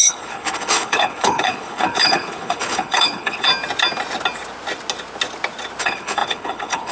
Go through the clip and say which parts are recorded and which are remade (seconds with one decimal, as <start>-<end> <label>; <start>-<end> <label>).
0.0-3.5 remade; 3.5-5.8 recorded; 5.8-6.9 remade